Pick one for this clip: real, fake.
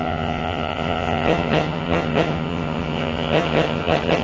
fake